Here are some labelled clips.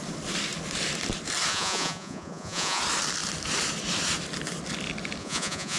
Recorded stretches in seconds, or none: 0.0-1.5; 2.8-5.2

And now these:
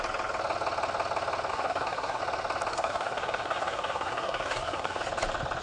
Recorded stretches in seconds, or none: 0.0-1.5; 2.2-2.7; 5.0-5.6

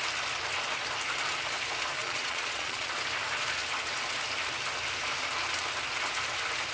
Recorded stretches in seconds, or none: 0.0-2.0; 2.9-6.7

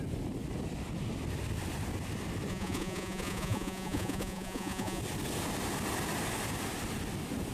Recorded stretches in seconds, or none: 0.0-2.5; 5.0-7.5

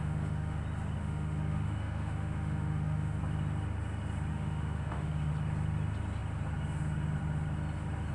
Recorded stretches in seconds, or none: 0.6-1.0; 3.2-4.3; 5.3-8.1